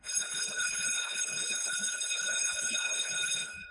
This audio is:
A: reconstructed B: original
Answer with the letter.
A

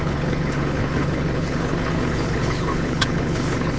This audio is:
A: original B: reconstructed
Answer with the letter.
B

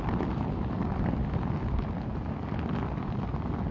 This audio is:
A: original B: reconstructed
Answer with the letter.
A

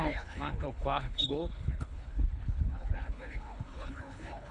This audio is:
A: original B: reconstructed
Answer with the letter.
B